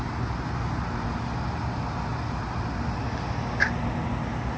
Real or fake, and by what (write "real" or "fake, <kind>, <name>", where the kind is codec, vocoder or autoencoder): real